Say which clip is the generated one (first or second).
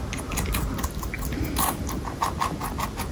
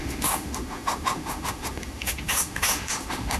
second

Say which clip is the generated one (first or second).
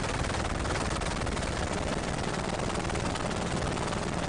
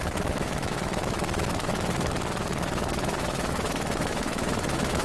second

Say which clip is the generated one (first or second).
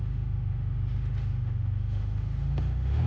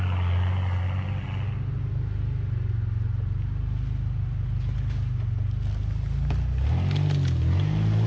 first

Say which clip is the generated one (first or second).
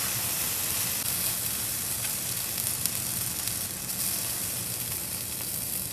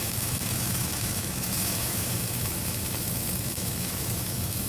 second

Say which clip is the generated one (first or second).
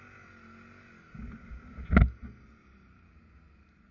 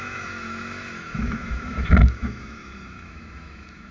second